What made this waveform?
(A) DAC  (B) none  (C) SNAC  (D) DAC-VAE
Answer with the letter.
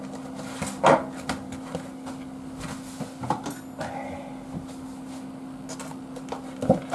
B